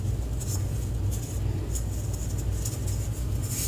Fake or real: real